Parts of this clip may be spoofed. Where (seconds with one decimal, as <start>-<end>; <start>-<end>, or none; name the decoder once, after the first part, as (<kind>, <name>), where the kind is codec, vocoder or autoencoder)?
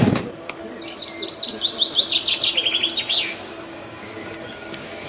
0.0-0.6 (codec, DAC); 3.7-5.1